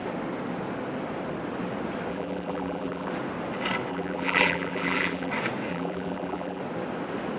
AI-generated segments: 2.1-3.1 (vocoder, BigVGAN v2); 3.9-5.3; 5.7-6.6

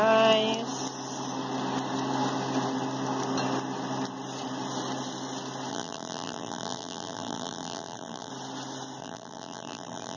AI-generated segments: 5.7-8.3 (vocoder, BigVGAN v2); 9.0-10.2

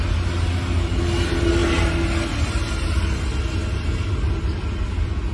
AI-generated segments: none